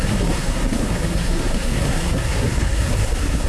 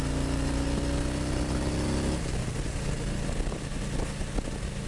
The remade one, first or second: first